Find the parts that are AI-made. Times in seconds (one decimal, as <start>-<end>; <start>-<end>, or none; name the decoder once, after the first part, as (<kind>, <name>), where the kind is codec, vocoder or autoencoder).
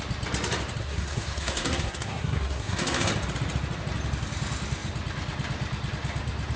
0.8-3.1 (codec, SNAC)